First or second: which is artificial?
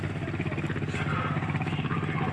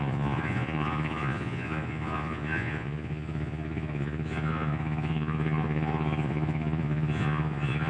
second